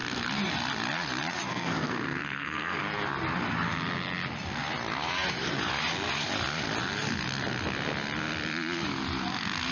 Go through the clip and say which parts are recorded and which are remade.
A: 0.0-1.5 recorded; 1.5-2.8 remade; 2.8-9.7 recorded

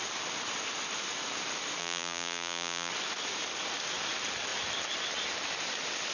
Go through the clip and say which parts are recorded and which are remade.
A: 0.0-1.8 recorded; 1.8-2.9 remade; 2.9-6.1 recorded

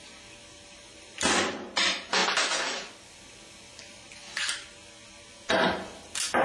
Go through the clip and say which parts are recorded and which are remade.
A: 0.0-6.4 recorded

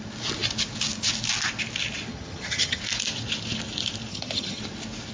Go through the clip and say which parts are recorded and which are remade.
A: 0.0-2.1 recorded; 2.1-2.8 remade; 2.8-4.1 recorded; 4.1-4.6 remade; 4.6-5.1 recorded